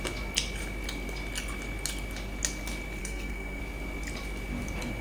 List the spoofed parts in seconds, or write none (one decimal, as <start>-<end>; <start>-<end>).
3.0-3.6